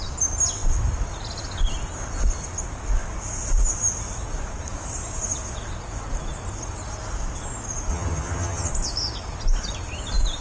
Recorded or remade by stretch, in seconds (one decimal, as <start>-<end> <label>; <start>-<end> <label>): 0.0-7.9 recorded; 7.9-8.7 remade; 8.7-10.4 recorded